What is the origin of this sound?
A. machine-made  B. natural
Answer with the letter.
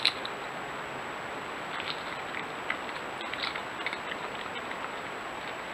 B